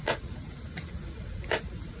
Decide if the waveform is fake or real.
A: fake